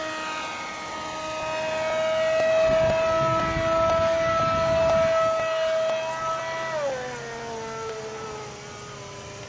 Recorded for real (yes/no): yes